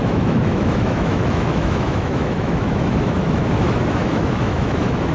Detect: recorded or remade remade